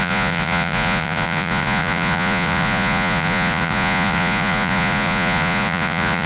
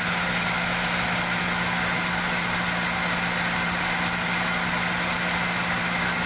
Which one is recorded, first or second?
second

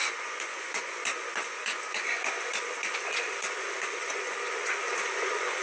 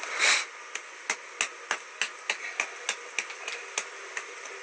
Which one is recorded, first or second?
second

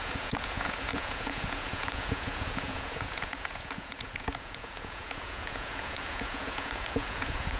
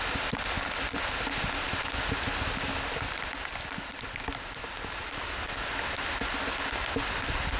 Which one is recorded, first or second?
second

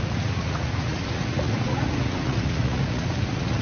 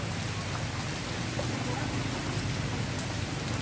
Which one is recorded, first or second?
second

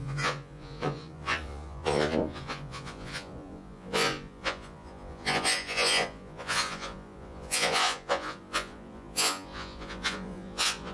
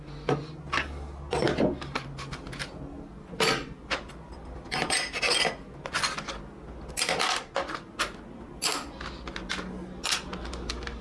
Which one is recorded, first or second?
second